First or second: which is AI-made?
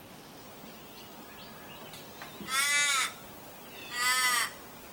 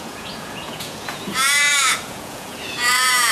second